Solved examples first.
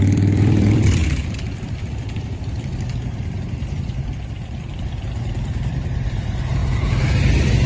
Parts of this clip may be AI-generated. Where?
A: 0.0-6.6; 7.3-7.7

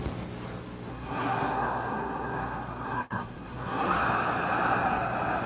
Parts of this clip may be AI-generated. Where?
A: 0.9-4.0

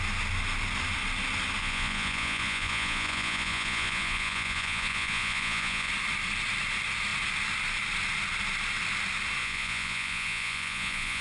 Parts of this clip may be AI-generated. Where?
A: 1.6-5.9; 9.4-11.2

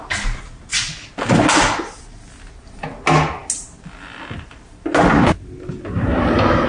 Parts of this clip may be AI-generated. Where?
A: none